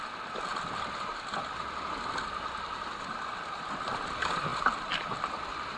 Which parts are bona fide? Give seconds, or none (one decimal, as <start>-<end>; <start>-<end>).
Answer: 0.5-4.0